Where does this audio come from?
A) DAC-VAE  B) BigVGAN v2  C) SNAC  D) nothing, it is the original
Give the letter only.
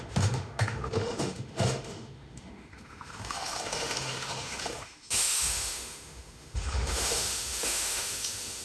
A